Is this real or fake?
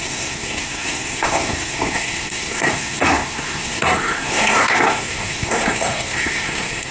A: fake